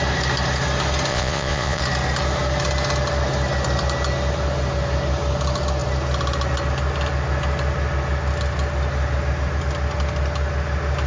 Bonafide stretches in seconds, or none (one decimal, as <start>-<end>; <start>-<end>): 0.0-1.1; 1.8-11.1